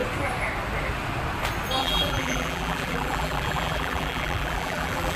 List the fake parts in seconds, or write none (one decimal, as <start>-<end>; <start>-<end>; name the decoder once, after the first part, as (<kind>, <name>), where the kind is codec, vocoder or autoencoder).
1.8-5.2 (vocoder, BigVGAN v2)